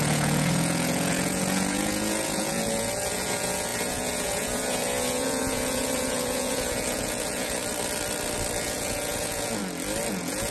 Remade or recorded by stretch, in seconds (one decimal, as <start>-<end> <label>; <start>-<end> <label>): 0.0-7.6 remade; 7.6-8.6 recorded; 8.6-9.6 remade; 9.6-10.1 recorded; 10.1-10.5 remade